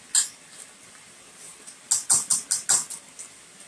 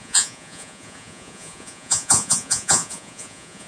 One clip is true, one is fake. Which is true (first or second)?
first